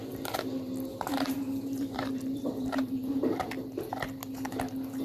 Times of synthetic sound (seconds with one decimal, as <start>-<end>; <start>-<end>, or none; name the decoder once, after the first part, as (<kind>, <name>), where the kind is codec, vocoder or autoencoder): 0.9-3.4 (vocoder, BigVGAN v2)